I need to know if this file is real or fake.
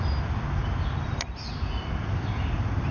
real